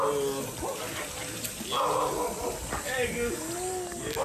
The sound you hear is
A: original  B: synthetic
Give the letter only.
A